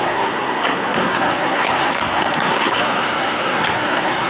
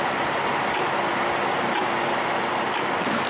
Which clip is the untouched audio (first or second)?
second